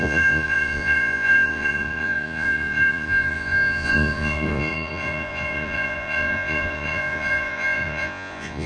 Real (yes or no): no